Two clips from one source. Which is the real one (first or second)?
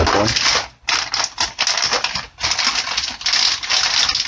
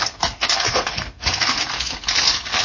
first